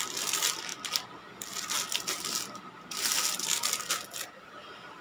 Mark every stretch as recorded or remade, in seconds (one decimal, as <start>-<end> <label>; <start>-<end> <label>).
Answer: 0.0-5.0 recorded